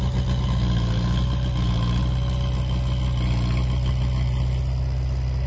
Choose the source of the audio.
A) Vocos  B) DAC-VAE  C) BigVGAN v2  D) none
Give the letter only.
D